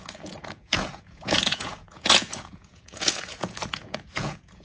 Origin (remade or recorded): remade